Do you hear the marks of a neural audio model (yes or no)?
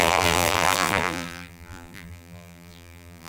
yes